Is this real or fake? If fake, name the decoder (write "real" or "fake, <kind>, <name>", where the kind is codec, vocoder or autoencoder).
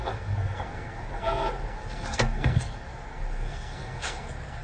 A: fake, codec, SNAC